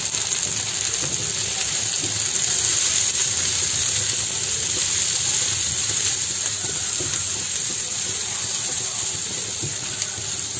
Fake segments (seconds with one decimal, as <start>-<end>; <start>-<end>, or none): none